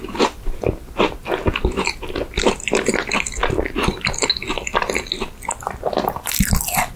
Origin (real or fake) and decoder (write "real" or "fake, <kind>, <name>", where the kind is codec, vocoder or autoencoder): real